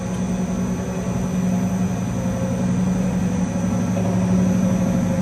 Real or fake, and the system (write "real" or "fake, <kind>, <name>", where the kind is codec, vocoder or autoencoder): real